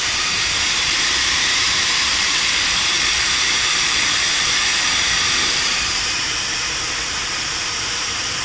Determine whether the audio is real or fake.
fake